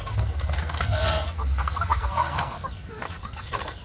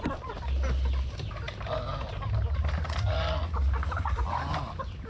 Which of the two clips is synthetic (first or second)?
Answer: first